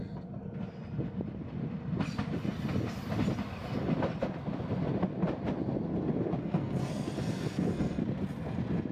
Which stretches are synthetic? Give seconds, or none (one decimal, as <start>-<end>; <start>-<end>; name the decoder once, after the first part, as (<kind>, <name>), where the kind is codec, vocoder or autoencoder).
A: 6.4-8.0 (codec, SNAC)